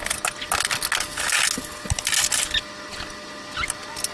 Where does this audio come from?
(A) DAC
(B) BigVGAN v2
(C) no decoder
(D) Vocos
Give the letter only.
C